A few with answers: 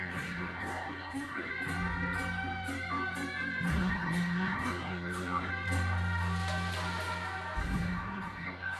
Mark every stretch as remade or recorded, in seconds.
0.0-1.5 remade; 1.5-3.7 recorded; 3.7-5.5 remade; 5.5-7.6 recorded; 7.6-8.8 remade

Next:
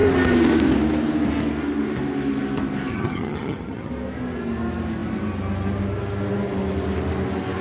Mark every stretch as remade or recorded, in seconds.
0.0-2.9 recorded; 2.9-3.9 remade; 3.9-7.6 recorded

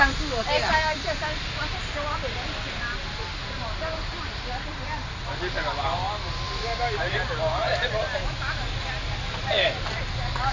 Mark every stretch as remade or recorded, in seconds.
0.0-10.5 recorded

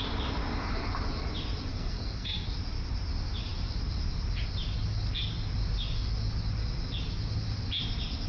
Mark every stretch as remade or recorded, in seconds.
0.0-1.7 recorded; 1.7-2.5 remade; 2.5-8.3 recorded